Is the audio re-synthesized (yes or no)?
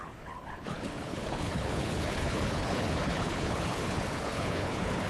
yes